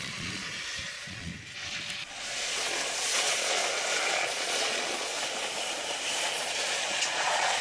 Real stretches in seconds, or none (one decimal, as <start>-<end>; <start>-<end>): 0.4-0.9; 1.3-2.1; 3.6-4.1; 5.1-6.2